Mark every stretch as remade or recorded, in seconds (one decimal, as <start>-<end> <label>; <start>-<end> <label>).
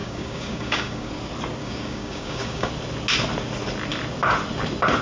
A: 0.0-1.1 remade; 1.1-1.6 recorded; 1.6-2.7 remade; 2.7-5.0 recorded